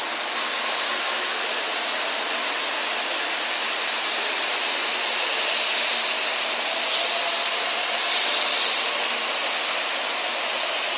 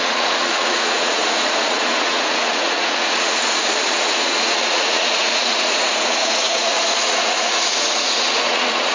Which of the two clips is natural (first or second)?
first